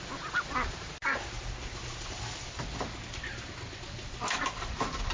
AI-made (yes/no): no